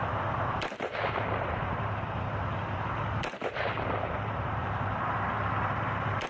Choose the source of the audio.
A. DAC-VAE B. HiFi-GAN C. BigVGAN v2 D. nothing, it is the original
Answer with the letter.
C